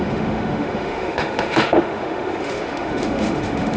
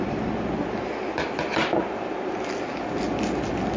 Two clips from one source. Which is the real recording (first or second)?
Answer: second